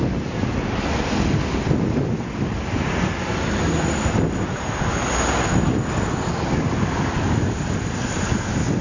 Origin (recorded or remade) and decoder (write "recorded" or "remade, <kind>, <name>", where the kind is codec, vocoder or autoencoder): recorded